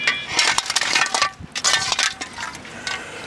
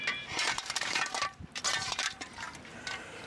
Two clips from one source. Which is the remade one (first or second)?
second